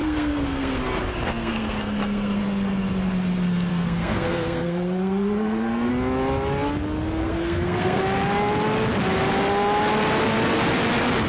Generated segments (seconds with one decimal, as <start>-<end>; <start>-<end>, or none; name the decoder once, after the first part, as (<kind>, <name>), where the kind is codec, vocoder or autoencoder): 0.0-0.8 (codec, SNAC); 1.4-2.4; 3.7-5.9; 7.2-8.0

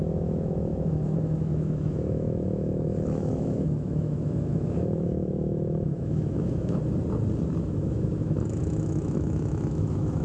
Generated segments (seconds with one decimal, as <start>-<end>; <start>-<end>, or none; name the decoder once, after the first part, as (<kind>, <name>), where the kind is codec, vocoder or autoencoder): 0.0-6.8 (autoencoder, DAC-VAE); 7.6-10.2